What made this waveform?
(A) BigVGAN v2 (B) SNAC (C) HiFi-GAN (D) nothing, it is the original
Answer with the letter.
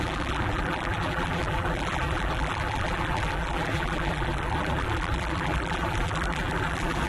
A